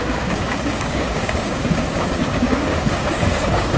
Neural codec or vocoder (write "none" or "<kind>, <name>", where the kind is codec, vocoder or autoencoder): codec, DAC